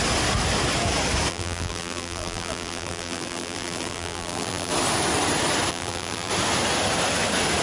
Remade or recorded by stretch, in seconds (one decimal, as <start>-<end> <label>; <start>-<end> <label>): 0.0-1.3 recorded; 1.3-4.7 remade; 4.7-5.7 recorded; 5.7-6.3 remade; 6.3-7.6 recorded